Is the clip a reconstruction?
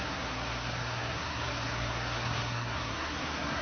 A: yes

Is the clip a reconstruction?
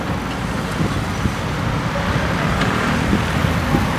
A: no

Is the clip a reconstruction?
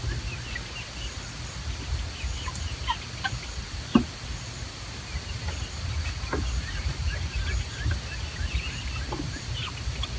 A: no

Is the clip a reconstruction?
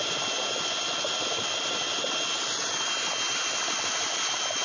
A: no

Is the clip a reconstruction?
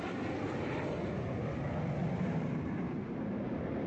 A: no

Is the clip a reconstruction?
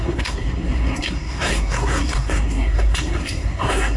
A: yes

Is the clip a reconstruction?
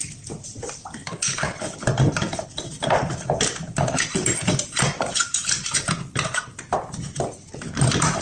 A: no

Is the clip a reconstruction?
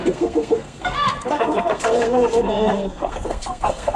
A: yes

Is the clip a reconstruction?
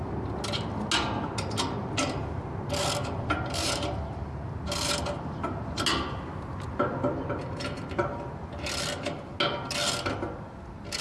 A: no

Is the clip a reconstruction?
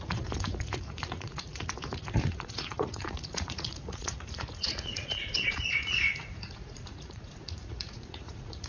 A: yes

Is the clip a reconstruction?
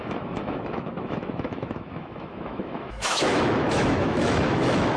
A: yes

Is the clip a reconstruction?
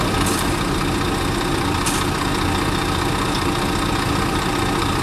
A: no